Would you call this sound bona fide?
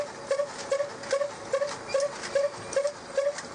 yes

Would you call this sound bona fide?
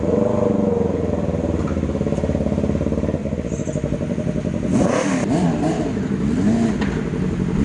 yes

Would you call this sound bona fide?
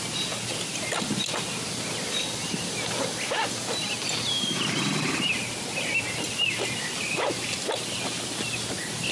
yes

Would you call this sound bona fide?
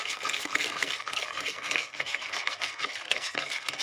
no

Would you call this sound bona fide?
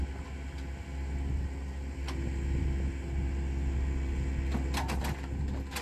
yes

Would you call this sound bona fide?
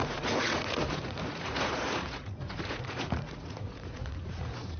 no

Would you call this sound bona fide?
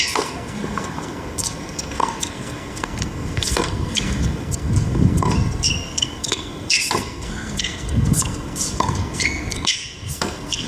no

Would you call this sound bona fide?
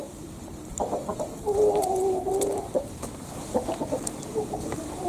yes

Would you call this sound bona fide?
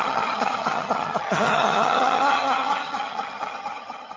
no